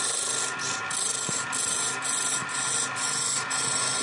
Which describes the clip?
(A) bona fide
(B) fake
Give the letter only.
A